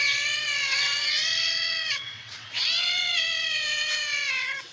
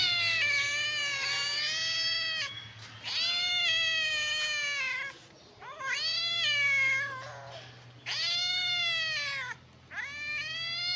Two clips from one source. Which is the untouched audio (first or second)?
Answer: second